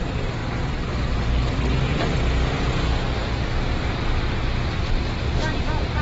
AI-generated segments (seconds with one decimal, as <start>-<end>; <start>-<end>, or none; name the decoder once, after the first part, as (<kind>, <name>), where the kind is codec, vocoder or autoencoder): none